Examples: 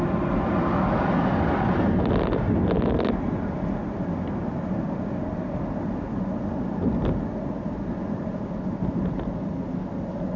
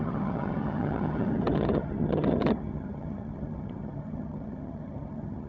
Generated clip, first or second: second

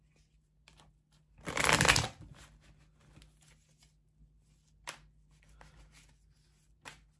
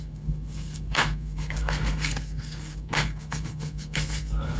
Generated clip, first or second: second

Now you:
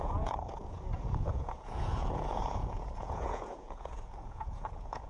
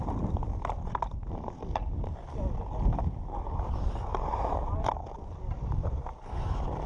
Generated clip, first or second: first